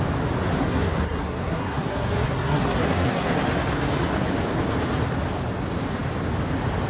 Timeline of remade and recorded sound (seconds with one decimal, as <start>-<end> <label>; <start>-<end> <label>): 0.0-0.6 recorded; 0.6-3.3 remade; 3.3-6.9 recorded